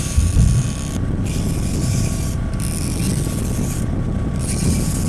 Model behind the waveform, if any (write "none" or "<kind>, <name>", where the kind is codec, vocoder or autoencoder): vocoder, BigVGAN v2